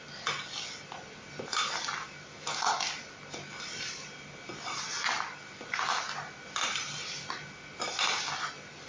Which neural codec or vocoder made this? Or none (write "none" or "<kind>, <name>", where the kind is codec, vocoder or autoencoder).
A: none